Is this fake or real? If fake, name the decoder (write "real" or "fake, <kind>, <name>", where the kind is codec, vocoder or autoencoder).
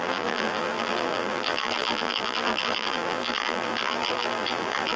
fake, vocoder, BigVGAN v2